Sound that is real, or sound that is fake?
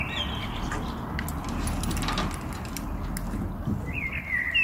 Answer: real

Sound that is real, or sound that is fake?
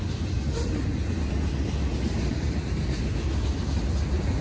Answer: real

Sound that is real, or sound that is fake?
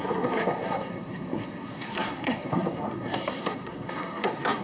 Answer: fake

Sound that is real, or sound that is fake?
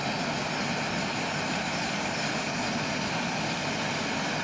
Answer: fake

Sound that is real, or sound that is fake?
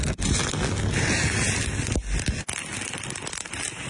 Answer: real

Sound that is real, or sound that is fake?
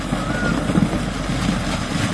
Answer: real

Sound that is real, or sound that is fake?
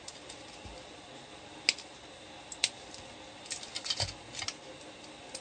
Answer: real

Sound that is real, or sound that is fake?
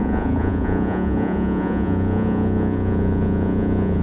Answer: fake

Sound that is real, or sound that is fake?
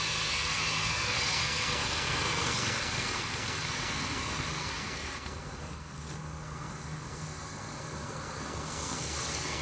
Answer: fake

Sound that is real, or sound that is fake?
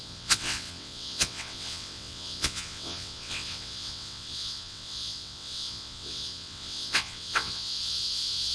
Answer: fake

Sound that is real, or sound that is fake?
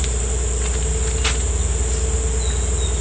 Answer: real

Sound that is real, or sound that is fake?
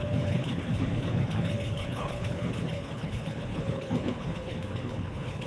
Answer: fake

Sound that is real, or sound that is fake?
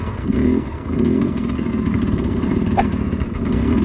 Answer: fake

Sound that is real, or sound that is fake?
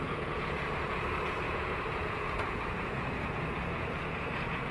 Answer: fake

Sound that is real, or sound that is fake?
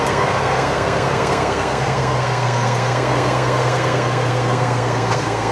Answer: fake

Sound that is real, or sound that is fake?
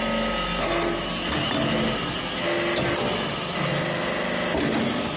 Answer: real